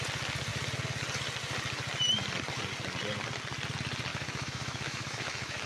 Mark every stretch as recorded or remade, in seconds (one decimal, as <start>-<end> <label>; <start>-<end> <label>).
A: 0.0-4.1 recorded; 4.1-5.7 remade